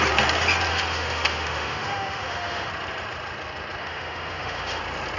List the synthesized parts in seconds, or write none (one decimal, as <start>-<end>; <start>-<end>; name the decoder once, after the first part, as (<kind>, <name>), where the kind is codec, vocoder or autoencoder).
0.7-2.7 (autoencoder, DAC-VAE); 3.8-4.8